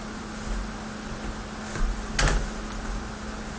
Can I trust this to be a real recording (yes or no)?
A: yes